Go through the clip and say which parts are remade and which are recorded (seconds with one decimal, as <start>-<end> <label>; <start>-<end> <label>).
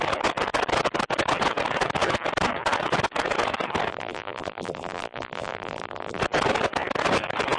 0.0-3.9 recorded; 3.9-6.2 remade; 6.2-7.6 recorded